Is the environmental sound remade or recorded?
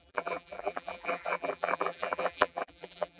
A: remade